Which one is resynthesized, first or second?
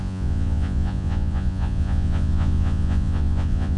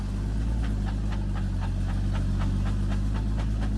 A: first